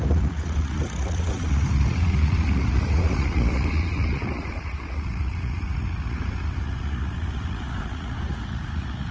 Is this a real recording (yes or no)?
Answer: no